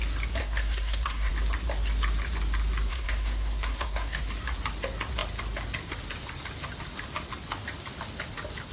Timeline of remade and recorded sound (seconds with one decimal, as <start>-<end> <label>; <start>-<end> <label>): 0.0-0.4 recorded; 0.4-1.3 remade; 1.3-2.9 recorded; 2.9-4.2 remade; 4.2-8.7 recorded

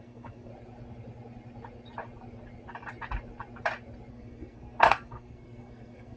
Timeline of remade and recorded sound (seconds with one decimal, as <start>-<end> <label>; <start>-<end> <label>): 0.0-0.5 remade; 0.5-4.1 recorded; 4.1-6.2 remade

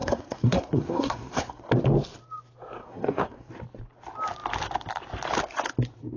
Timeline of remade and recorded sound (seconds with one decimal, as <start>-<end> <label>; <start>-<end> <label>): 0.0-1.7 remade; 1.7-2.8 recorded; 2.8-3.5 remade; 3.5-6.2 recorded

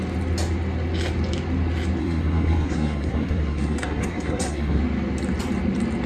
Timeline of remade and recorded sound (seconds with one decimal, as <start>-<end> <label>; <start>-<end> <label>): 0.0-2.0 recorded; 2.0-4.8 remade; 4.8-6.1 recorded

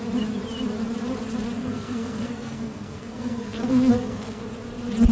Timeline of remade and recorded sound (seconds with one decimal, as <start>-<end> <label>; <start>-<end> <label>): 0.0-1.6 recorded; 1.6-4.4 remade; 4.4-5.1 recorded

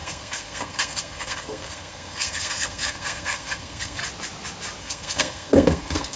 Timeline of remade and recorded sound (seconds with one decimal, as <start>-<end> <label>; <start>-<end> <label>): 0.0-4.0 remade; 4.0-4.8 recorded; 4.8-6.2 remade